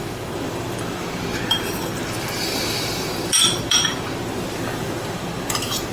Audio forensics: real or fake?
fake